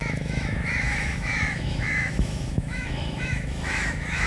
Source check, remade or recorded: remade